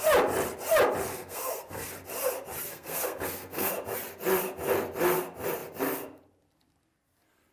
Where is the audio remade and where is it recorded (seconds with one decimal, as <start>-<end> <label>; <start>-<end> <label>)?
0.0-1.1 recorded; 1.1-1.9 remade; 1.9-2.7 recorded; 2.7-3.7 remade; 3.7-7.5 recorded